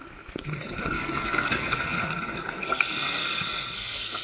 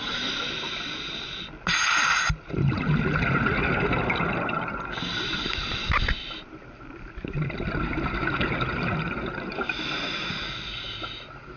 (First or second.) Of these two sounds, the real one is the second